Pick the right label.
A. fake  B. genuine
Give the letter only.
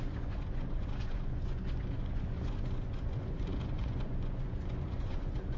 A